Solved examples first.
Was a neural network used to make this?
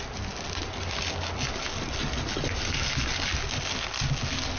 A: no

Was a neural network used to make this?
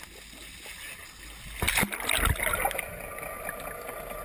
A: no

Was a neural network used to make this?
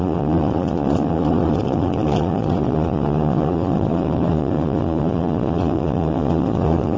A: yes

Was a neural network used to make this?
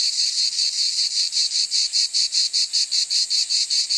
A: yes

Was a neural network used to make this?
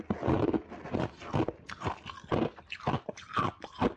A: no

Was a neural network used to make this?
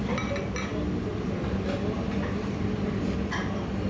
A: no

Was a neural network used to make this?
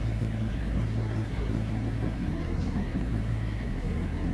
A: yes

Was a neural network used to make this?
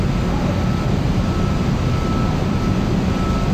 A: no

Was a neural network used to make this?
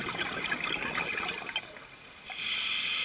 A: no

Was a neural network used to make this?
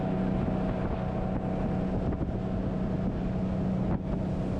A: no